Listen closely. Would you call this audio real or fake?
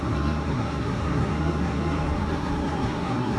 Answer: fake